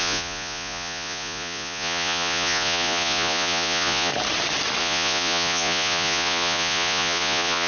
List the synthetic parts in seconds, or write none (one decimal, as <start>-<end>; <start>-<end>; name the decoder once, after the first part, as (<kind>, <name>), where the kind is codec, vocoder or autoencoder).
0.0-4.1 (vocoder, Vocos); 4.8-7.7